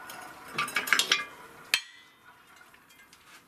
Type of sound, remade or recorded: recorded